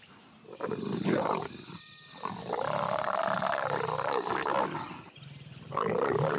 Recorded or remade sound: recorded